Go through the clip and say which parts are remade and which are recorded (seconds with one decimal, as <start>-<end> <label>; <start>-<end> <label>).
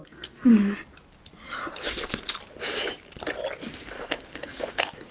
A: 0.0-0.5 remade; 0.5-3.6 recorded; 3.6-5.1 remade